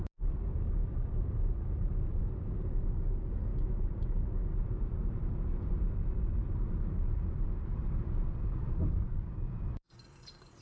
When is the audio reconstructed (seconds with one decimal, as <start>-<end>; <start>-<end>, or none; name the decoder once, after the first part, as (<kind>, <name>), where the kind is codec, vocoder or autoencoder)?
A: 0.0-3.5 (vocoder, BigVGAN v2); 4.7-10.6